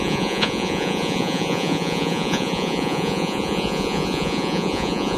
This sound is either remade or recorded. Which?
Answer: remade